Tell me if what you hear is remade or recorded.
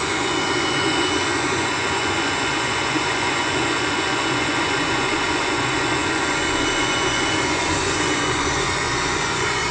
remade